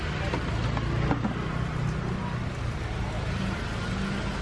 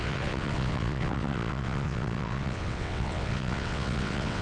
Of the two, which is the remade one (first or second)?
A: second